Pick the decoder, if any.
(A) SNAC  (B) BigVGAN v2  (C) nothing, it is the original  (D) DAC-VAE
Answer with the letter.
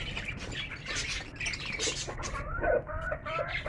C